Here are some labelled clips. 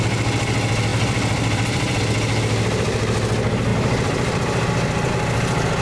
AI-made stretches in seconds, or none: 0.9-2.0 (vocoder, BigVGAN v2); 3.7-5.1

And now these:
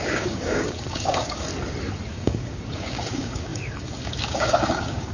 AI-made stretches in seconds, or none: 0.0-1.5 (codec, DAC); 2.1-5.1

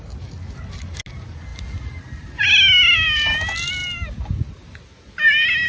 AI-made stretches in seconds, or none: none

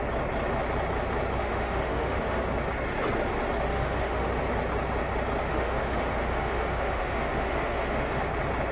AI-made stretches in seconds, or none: 1.4-2.4 (autoencoder, DAC-VAE); 3.7-4.3; 5.5-8.2